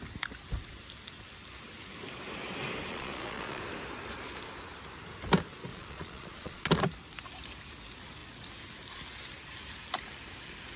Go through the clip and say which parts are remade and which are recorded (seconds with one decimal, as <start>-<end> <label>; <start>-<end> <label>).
0.0-2.9 recorded; 2.9-3.6 remade; 3.6-5.7 recorded; 5.7-6.7 remade; 6.7-10.8 recorded